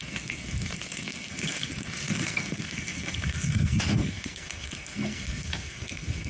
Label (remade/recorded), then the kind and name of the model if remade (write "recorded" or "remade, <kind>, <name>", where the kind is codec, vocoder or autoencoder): remade, codec, SNAC